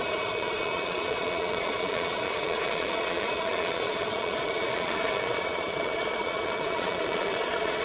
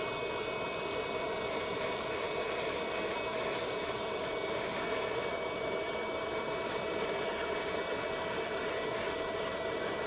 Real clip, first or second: second